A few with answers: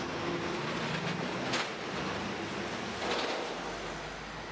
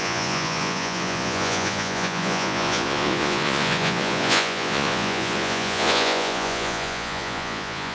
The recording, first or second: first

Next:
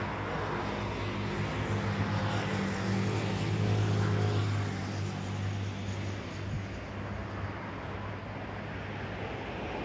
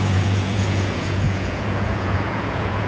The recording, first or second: first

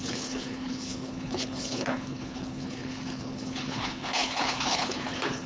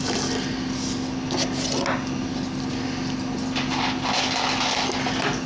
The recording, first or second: second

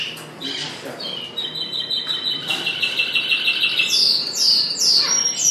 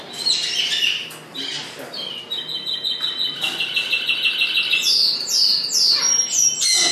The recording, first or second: second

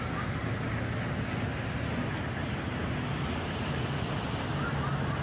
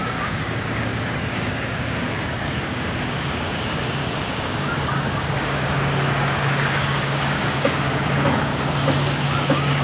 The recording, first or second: first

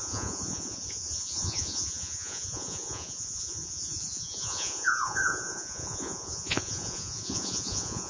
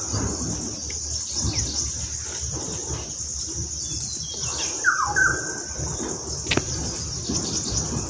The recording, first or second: second